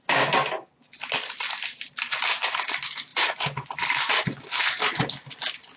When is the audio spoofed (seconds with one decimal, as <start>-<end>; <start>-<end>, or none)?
3.1-4.6